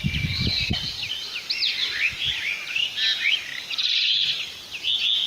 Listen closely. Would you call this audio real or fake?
real